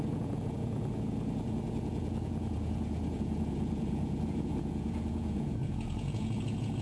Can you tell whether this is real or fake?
fake